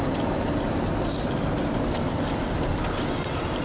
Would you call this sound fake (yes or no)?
no